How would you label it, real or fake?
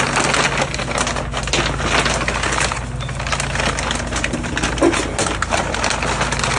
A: real